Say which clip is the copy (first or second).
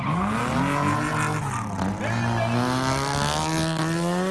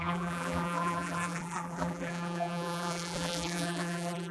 second